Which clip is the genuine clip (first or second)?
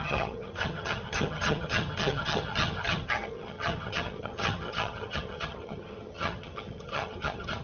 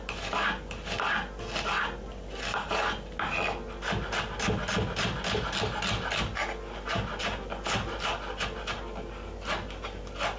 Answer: second